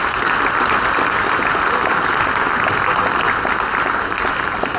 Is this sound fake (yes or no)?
no